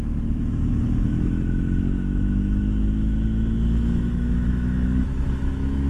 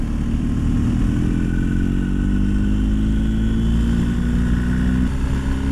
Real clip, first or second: second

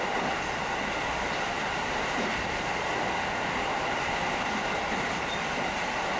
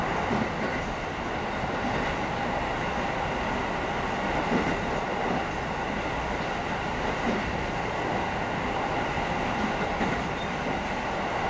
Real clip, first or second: second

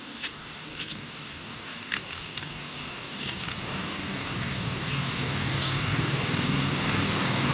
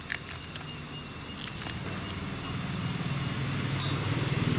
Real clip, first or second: second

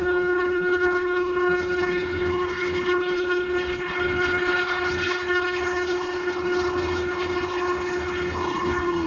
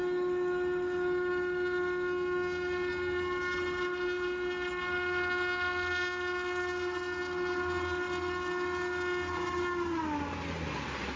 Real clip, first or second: second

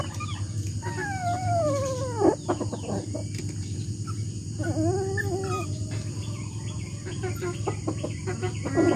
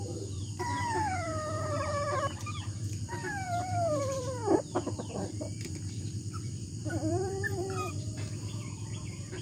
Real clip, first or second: first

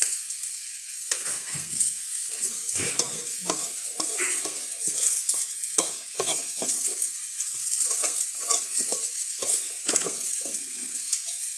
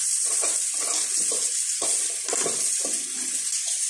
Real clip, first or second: second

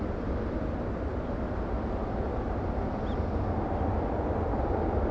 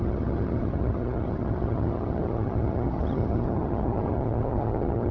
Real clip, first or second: first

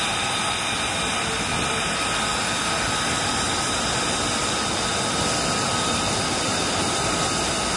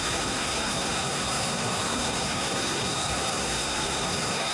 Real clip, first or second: first